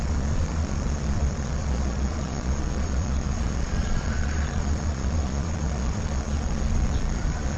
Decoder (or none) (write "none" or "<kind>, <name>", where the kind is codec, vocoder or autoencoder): vocoder, Vocos